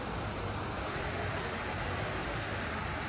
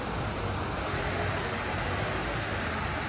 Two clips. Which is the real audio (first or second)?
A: second